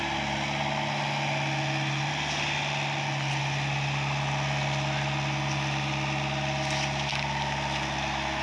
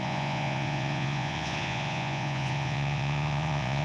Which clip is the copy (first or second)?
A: second